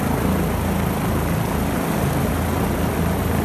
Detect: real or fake real